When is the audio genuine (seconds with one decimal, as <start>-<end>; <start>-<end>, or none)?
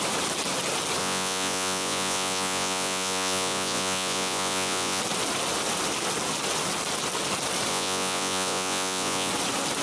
0.0-1.0; 5.0-7.7; 9.3-9.8